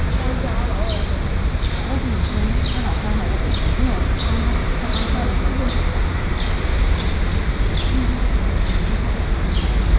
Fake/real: real